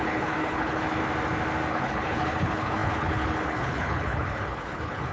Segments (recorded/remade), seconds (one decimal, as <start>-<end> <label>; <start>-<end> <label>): 0.0-1.0 remade; 1.0-1.7 recorded; 1.7-5.1 remade